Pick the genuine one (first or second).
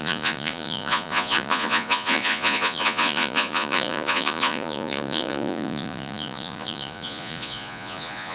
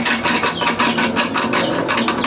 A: second